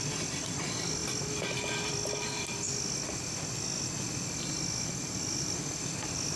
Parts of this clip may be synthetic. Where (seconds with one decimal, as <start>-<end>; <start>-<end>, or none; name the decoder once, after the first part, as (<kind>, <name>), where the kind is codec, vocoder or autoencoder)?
none